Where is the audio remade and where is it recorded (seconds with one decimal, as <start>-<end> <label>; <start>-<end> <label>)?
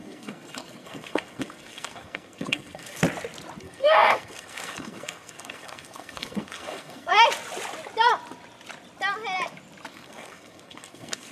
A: 0.0-3.0 remade; 3.0-3.6 recorded; 3.6-7.1 remade; 7.1-9.9 recorded; 9.9-11.3 remade